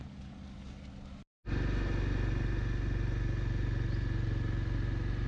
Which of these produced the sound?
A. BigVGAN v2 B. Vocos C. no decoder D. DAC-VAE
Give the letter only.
C